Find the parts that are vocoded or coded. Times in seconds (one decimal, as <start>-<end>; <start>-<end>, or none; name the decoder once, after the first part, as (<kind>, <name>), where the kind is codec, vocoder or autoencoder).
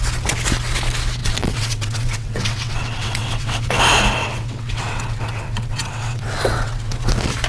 1.2-3.8 (vocoder, WaveNeXt); 4.2-7.1